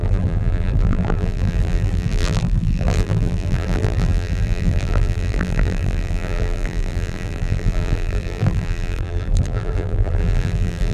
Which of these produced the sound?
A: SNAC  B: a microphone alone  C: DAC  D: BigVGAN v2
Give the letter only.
D